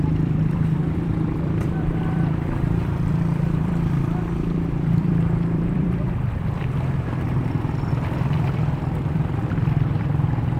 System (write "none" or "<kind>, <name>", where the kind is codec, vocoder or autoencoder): vocoder, BigVGAN v2